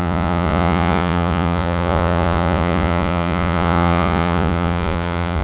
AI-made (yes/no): yes